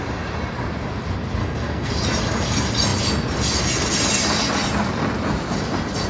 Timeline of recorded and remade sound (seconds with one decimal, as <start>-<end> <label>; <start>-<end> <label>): 0.0-1.4 recorded; 1.4-1.9 remade; 1.9-6.1 recorded